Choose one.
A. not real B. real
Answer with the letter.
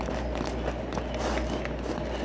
B